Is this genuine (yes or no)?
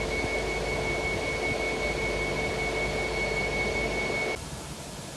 yes